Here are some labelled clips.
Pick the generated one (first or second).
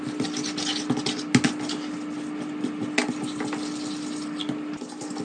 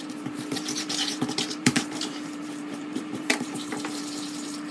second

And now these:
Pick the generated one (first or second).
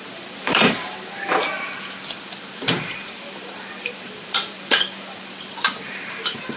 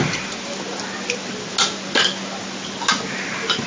first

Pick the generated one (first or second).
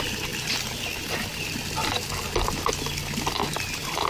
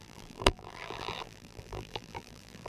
second